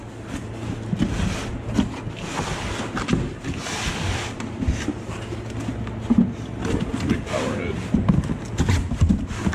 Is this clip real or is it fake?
real